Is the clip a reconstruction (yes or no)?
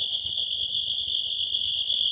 no